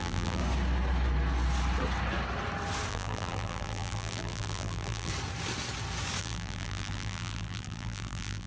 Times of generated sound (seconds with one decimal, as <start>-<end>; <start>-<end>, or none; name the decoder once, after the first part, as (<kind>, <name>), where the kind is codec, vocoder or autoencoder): 0.0-0.4 (vocoder, BigVGAN v2); 2.9-5.1; 6.2-8.5